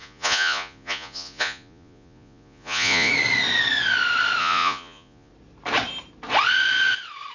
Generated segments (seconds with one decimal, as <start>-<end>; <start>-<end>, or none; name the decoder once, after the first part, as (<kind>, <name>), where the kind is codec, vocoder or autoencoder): 0.0-3.1 (vocoder, Vocos); 4.4-5.3